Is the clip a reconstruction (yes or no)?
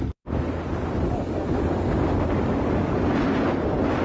no